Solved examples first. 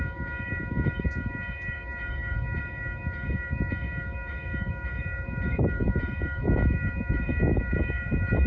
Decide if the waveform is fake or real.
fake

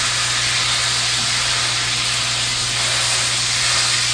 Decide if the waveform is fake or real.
real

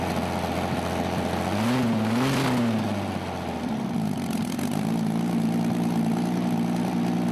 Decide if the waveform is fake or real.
real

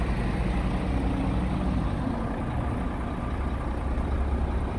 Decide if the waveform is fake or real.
real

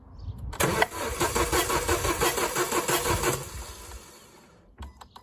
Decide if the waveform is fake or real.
real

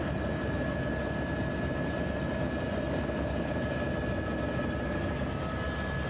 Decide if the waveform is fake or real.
real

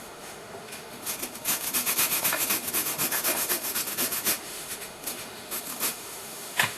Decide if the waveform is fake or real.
fake